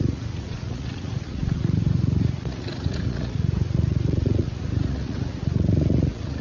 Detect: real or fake fake